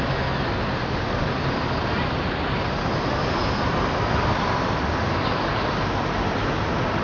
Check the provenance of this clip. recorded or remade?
recorded